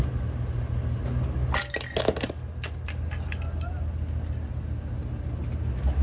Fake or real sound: real